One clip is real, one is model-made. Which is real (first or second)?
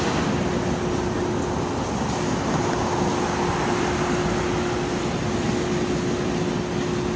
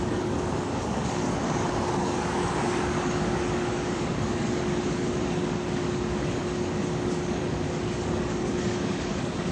first